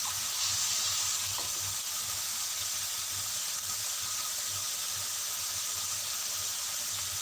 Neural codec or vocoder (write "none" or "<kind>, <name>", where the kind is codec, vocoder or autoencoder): none